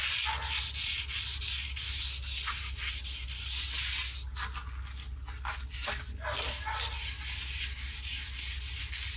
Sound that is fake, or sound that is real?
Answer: real